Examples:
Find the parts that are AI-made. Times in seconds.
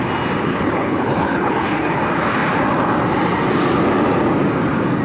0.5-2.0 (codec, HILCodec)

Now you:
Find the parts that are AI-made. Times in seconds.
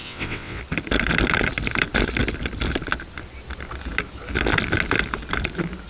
0.0-0.6 (vocoder, WaveNeXt)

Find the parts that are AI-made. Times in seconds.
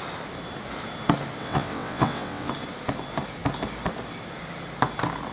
1.4-2.5 (vocoder, WaveNeXt)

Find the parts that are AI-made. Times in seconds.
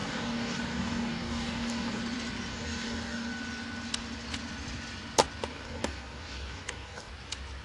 0.0-2.0 (codec, DAC); 2.5-3.3; 5.5-7.1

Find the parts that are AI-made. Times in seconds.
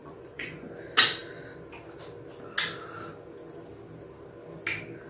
0.0-0.7 (vocoder, Vocos)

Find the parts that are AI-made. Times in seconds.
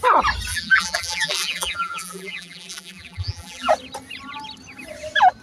0.5-3.7 (vocoder, BigVGAN v2)